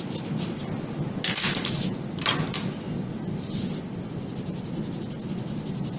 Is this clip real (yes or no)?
yes